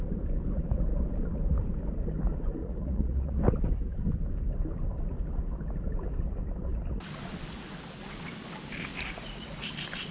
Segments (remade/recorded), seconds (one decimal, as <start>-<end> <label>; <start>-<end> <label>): 0.0-2.6 recorded; 2.6-3.4 remade; 3.4-8.9 recorded; 8.9-9.7 remade; 9.7-10.1 recorded